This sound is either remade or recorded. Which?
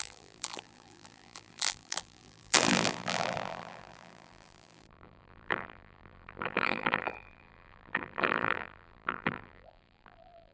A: remade